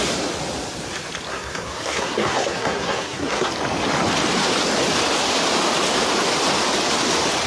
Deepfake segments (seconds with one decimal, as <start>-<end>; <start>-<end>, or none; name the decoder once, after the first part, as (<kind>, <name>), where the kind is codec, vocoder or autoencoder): 1.3-3.5 (codec, SNAC)